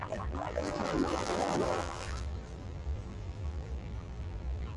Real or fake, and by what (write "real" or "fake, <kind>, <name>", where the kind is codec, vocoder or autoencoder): fake, vocoder, BigVGAN v2